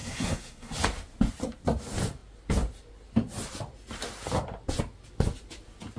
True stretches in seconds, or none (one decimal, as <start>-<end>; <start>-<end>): 0.7-6.0

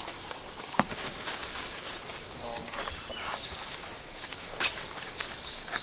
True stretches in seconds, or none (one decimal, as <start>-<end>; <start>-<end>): 2.6-3.2

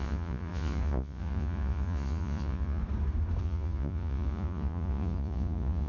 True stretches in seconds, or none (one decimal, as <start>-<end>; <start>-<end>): 2.8-3.4

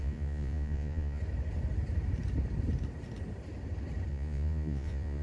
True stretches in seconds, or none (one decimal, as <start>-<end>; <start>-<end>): 1.2-4.1

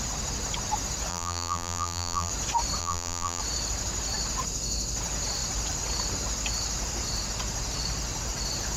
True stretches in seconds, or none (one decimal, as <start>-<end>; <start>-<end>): 0.0-1.1; 2.3-2.8; 3.4-8.8